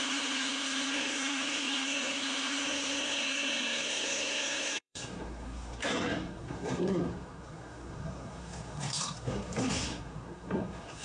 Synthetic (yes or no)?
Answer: yes